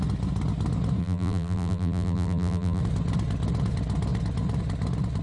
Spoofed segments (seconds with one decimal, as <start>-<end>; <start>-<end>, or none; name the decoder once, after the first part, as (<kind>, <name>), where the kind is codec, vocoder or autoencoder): 1.0-2.8 (vocoder, BigVGAN v2)